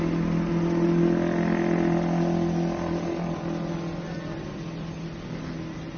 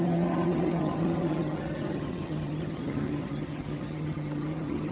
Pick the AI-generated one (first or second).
second